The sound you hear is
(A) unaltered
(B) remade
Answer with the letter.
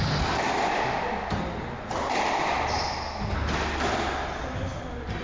A